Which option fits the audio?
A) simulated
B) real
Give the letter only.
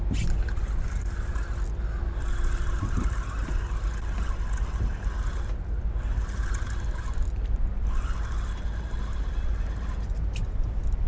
B